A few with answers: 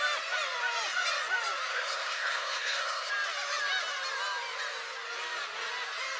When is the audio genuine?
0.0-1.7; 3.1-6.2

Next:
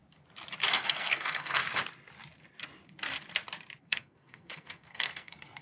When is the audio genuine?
0.0-0.7; 1.6-3.8

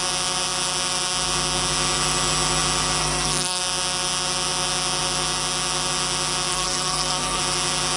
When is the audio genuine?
0.0-3.0; 3.6-6.5; 7.4-8.0

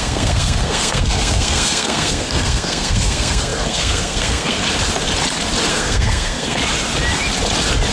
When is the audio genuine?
4.6-5.7; 6.6-7.9

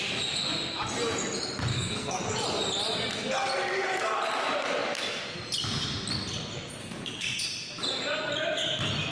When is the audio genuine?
0.0-1.7; 2.3-6.8; 7.4-9.1

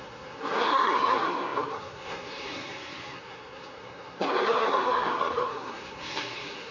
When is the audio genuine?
none